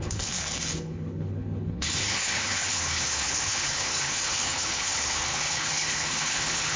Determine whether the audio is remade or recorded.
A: remade